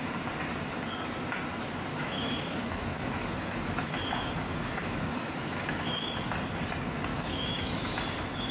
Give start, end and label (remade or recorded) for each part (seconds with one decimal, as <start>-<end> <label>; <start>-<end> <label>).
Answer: 0.0-1.9 recorded; 1.9-6.3 remade; 6.3-7.1 recorded; 7.1-8.0 remade; 8.0-8.5 recorded